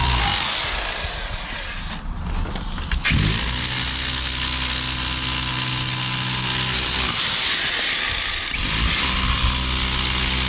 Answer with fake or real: real